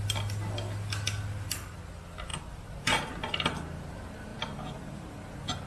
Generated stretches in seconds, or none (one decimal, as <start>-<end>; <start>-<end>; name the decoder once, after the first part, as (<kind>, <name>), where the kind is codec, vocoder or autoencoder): 4.3-5.1 (vocoder, BigVGAN v2)